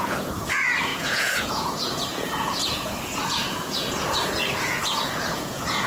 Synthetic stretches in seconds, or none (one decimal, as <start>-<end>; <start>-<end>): 0.0-5.9

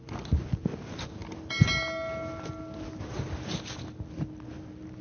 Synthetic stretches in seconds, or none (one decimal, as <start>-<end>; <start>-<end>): none

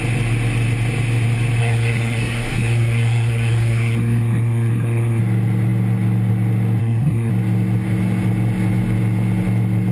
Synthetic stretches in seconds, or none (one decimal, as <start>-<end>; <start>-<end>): 1.6-5.2; 6.8-7.3

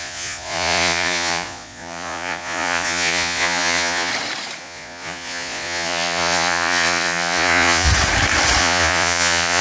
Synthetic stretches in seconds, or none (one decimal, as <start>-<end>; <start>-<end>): 0.0-4.1; 4.6-7.9; 8.6-9.6

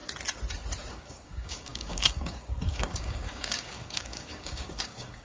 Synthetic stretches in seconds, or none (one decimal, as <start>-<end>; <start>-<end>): 0.9-5.2

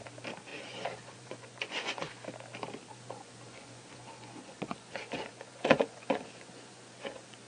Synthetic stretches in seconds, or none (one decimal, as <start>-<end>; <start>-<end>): 0.5-2.1; 2.9-7.5

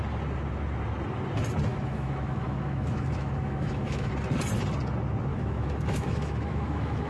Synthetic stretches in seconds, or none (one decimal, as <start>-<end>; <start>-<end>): 1.7-4.1; 5.3-7.1

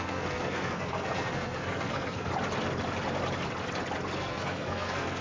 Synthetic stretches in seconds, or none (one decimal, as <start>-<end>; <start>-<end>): 0.0-2.3; 4.2-5.2